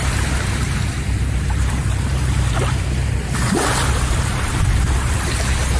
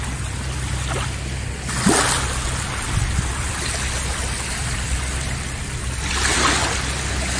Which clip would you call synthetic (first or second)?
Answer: first